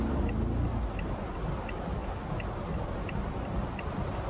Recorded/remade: recorded